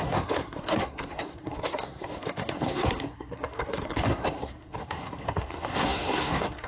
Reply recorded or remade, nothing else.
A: remade